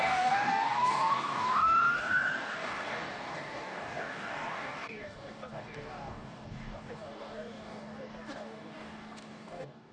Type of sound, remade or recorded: remade